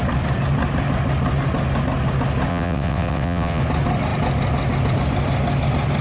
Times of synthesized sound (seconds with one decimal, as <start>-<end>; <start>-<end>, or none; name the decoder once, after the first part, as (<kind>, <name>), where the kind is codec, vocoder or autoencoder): 2.5-3.6 (vocoder, WaveNeXt)